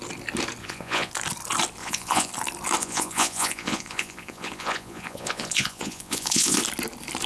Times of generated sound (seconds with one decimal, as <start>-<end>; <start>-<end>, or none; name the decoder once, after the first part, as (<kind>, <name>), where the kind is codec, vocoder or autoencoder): 0.6-1.1 (vocoder, Vocos); 1.8-2.3; 2.8-6.6